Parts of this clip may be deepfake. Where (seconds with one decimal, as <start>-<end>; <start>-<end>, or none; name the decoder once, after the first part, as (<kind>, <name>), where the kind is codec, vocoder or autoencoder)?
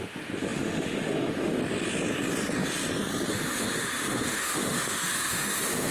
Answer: 0.0-1.6 (autoencoder, DAC-VAE); 3.3-5.9